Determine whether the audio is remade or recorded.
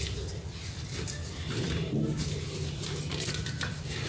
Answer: recorded